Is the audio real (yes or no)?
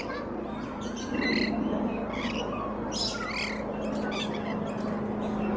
yes